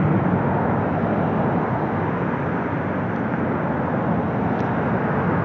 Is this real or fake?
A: real